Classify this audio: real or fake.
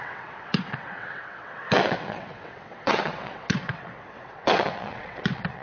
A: fake